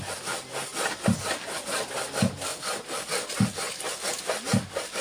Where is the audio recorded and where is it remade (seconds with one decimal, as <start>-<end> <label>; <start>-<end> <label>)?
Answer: 0.0-5.0 recorded

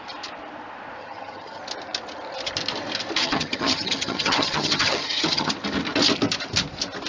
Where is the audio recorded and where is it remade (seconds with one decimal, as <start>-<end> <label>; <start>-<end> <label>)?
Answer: 0.0-1.0 recorded; 1.0-1.6 remade; 1.6-3.2 recorded; 3.2-5.5 remade; 5.5-7.1 recorded

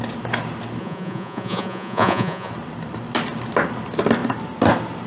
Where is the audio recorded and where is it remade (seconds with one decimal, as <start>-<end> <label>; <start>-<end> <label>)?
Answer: 0.0-0.8 recorded; 0.8-2.5 remade; 2.5-5.1 recorded

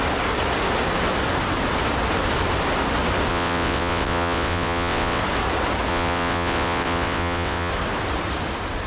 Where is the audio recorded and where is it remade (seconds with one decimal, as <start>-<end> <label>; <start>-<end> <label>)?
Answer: 0.0-3.3 recorded; 3.3-5.2 remade; 5.2-5.9 recorded; 5.9-7.7 remade; 7.7-8.9 recorded

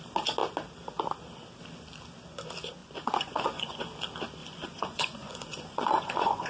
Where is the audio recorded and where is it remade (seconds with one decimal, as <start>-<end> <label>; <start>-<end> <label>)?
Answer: 0.0-2.8 recorded; 2.8-3.8 remade; 3.8-4.4 recorded; 4.4-6.5 remade

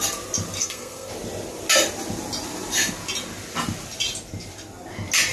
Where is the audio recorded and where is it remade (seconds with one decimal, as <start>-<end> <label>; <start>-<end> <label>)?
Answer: 0.0-0.6 recorded; 0.6-1.1 remade; 1.1-5.3 recorded

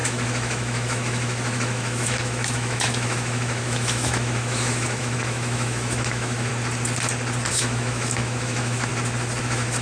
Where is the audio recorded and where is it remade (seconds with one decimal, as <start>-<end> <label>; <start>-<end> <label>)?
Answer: 0.0-6.5 remade; 6.5-7.5 recorded; 7.5-8.9 remade; 8.9-9.4 recorded; 9.4-9.8 remade

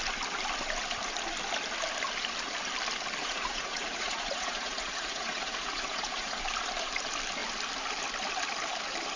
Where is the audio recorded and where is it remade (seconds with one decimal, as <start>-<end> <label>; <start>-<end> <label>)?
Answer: 0.0-3.2 recorded; 3.2-6.4 remade; 6.4-9.2 recorded